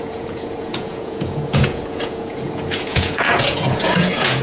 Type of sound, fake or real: fake